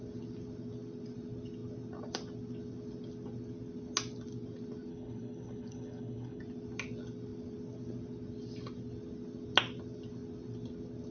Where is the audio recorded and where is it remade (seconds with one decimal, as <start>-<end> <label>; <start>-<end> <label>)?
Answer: 0.0-4.9 recorded; 4.9-6.4 remade; 6.4-11.1 recorded